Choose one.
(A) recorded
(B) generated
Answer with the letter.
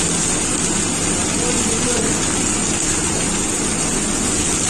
A